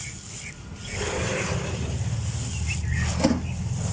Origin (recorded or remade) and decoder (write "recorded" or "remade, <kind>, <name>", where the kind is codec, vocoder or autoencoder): recorded